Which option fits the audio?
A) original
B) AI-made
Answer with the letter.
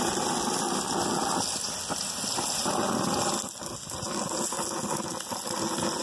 A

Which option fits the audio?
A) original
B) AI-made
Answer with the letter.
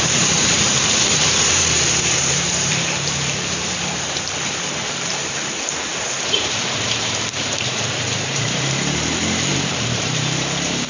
B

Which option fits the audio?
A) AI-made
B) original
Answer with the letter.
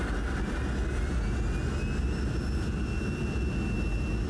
B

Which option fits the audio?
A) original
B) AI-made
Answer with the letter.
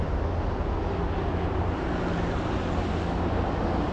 A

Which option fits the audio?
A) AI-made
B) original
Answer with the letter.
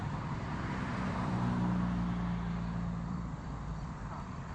A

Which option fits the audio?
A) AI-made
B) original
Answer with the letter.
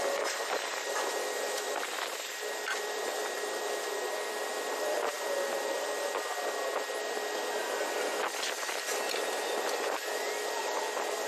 B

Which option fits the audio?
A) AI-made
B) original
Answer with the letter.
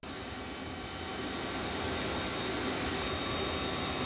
B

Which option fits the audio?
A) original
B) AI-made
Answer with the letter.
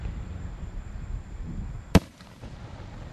B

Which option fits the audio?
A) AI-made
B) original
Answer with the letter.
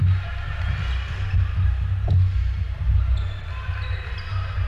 B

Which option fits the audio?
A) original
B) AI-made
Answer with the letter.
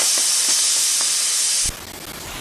A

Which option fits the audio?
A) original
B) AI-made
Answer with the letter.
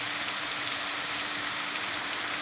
B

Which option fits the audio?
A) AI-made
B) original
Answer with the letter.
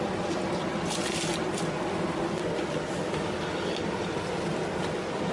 B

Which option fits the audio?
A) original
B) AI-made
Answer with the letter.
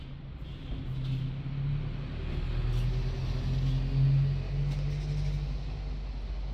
A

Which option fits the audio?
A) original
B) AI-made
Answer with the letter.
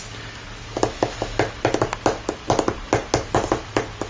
A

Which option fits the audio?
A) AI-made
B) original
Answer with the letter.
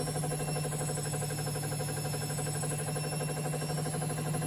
B